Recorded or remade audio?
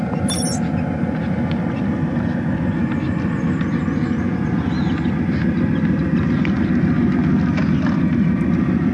recorded